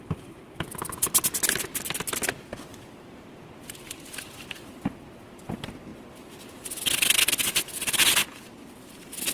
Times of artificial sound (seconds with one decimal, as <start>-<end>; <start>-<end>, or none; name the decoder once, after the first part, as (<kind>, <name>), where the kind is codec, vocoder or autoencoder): none